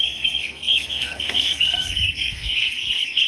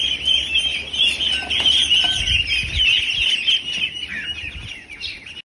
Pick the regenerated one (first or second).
first